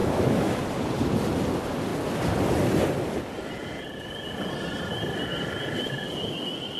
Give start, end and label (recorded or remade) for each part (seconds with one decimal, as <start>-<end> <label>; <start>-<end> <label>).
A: 0.0-0.6 remade; 0.6-6.8 recorded